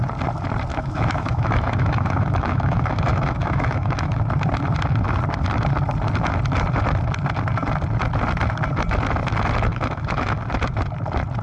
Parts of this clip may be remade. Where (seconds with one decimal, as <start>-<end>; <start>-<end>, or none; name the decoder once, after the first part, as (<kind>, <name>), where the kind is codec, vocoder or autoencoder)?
0.7-4.2 (autoencoder, DAC-VAE); 9.7-10.4